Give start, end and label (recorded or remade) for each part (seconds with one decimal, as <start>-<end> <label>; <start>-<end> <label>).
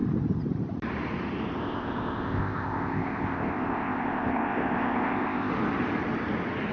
0.0-1.6 recorded; 1.6-5.5 remade; 5.5-6.7 recorded